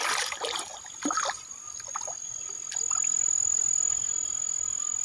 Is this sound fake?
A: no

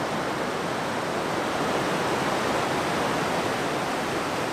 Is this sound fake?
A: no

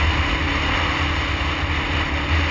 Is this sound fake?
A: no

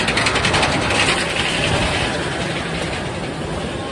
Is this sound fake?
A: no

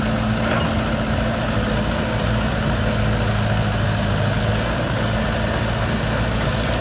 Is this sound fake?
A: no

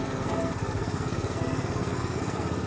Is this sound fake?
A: yes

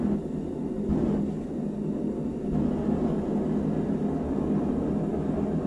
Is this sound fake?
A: no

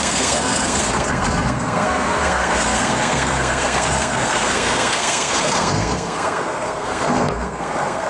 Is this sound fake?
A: yes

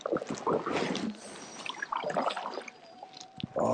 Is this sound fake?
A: no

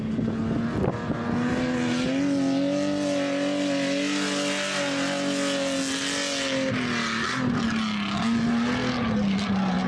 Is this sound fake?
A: no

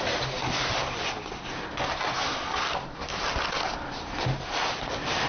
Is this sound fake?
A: no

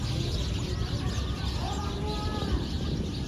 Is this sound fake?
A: no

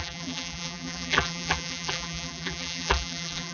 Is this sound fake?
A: yes